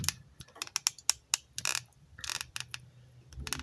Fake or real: real